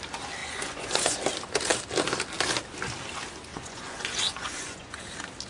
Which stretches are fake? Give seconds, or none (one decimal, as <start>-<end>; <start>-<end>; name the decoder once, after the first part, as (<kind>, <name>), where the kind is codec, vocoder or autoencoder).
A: 0.4-1.2 (vocoder, Vocos); 3.5-5.0